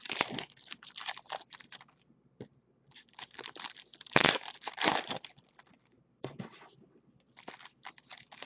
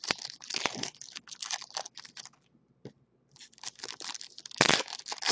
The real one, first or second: second